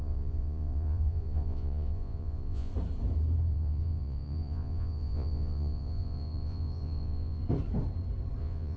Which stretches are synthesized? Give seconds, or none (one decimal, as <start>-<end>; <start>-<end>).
0.0-2.7; 3.5-7.4; 8.4-8.8